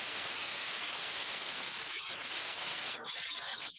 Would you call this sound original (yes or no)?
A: no